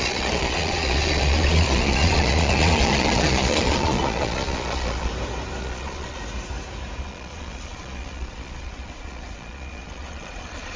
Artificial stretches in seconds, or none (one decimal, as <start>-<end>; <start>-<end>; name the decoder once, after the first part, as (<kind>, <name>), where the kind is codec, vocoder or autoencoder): 0.0-5.1 (vocoder, Vocos); 5.6-6.2; 7.0-10.8